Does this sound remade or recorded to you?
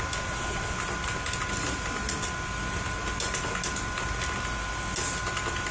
recorded